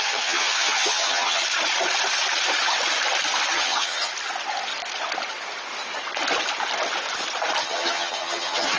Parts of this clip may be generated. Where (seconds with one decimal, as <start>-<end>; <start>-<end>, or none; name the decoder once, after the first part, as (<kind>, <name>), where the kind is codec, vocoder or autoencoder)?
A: 0.0-1.4 (vocoder, HiFi-GAN); 3.5-4.1; 7.6-8.8